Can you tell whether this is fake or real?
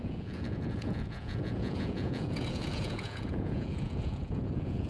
fake